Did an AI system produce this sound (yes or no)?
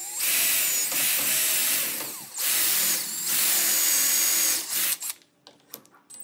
no